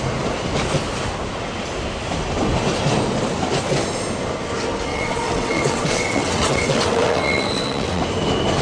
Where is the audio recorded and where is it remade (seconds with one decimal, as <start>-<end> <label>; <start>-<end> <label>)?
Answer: 0.0-4.9 recorded; 4.9-8.0 remade; 8.0-8.6 recorded